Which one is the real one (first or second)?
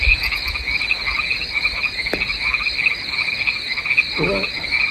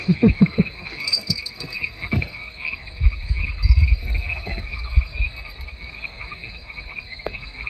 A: first